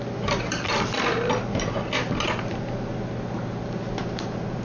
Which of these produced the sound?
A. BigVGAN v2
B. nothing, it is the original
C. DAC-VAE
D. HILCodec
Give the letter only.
B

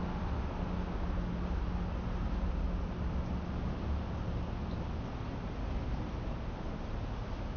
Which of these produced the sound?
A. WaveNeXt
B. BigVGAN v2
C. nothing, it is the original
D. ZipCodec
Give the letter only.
C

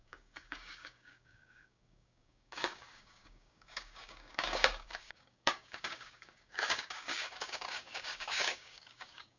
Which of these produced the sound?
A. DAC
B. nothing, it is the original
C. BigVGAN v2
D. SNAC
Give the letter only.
A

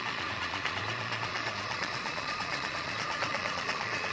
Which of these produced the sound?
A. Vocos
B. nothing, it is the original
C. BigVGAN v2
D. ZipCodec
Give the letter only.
A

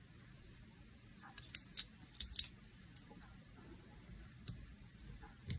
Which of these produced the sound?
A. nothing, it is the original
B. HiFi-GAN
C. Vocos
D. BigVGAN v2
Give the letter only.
D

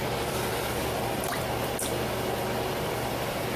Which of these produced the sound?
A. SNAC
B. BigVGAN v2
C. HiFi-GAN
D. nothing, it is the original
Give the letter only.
D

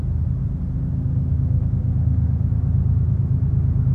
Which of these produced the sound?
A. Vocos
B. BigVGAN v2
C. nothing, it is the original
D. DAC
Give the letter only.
C